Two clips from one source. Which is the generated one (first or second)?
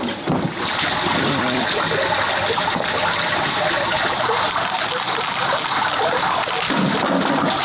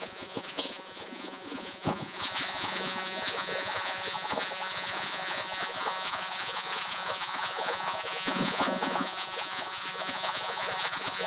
second